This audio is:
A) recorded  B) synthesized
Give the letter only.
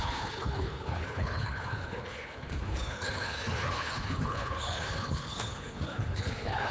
B